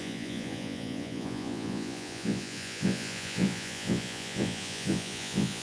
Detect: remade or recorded remade